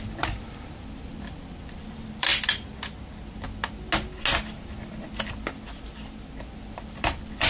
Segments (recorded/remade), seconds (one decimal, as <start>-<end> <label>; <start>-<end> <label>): 0.0-2.3 remade; 2.3-6.7 recorded; 6.7-7.5 remade

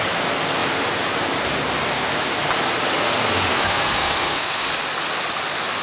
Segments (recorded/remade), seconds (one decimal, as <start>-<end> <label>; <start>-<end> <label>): 0.0-3.5 recorded; 3.5-4.7 remade; 4.7-5.8 recorded

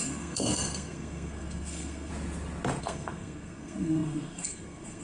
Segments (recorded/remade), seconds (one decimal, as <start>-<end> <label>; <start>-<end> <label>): 0.0-2.1 remade; 2.1-2.8 recorded; 2.8-5.0 remade

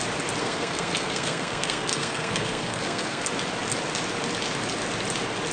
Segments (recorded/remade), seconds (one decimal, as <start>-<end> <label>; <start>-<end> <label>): 0.0-0.4 recorded; 0.4-3.2 remade; 3.2-5.5 recorded

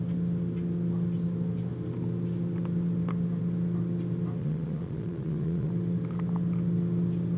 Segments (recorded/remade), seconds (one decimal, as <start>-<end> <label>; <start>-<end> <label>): 0.0-4.4 recorded; 4.4-5.7 remade; 5.7-7.4 recorded

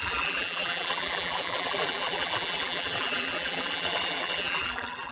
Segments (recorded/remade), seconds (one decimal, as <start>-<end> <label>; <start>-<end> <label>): 0.0-5.1 remade